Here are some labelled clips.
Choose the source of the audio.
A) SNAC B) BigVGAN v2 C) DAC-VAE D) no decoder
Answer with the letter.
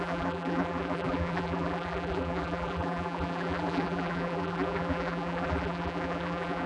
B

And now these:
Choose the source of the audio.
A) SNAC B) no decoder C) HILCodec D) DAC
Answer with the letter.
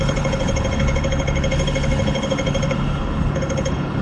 C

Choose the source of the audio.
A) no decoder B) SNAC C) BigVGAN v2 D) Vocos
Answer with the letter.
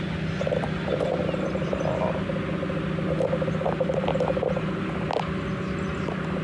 A